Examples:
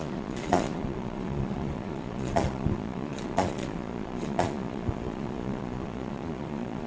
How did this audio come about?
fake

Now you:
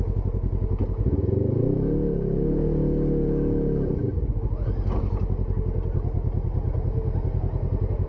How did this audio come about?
real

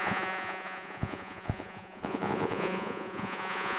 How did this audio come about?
fake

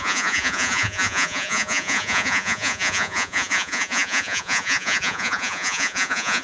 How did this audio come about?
fake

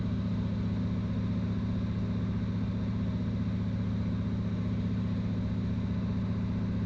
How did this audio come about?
real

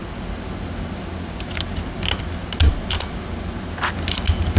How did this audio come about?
real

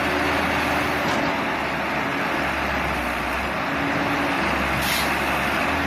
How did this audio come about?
real